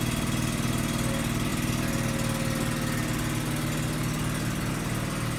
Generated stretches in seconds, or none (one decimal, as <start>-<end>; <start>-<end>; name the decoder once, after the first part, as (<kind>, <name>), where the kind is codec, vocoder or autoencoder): none